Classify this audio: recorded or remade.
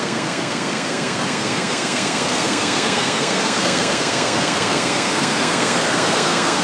remade